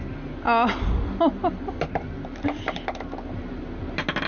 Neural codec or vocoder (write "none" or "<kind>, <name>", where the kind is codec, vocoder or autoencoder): none